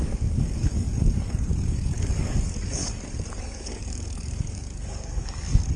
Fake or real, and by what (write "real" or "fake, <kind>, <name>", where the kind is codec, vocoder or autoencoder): fake, codec, DAC